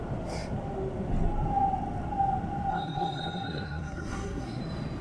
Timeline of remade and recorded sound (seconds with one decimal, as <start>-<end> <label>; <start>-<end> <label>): 0.0-2.7 recorded; 2.7-4.6 remade; 4.6-5.0 recorded